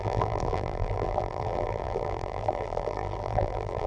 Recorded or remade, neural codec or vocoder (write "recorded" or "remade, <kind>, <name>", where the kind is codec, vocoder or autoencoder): remade, vocoder, BigVGAN v2